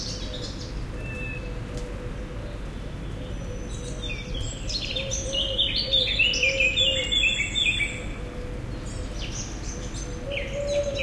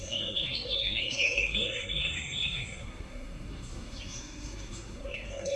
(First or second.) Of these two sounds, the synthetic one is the second